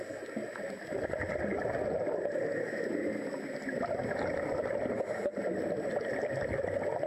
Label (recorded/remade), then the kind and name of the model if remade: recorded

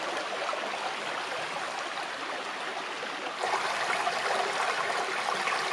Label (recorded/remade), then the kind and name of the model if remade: recorded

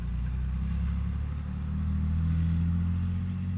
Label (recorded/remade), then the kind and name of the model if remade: recorded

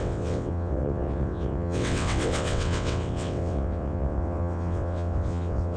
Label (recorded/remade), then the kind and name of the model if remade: remade, vocoder, WaveNeXt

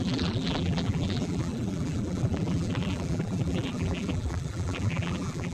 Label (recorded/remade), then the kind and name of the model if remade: remade, vocoder, BigVGAN v2